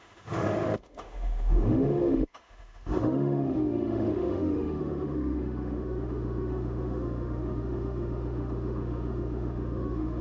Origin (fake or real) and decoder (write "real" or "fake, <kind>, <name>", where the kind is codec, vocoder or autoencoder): fake, autoencoder, DAC-VAE